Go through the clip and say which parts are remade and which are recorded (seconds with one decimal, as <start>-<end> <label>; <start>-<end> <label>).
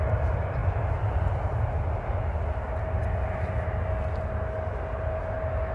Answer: 0.0-5.7 recorded